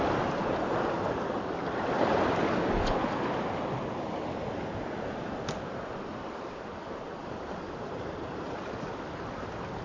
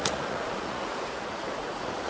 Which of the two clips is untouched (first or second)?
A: first